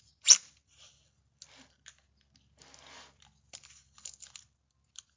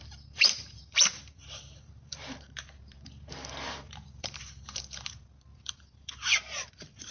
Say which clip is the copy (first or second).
second